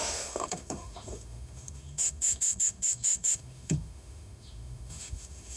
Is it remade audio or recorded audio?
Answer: remade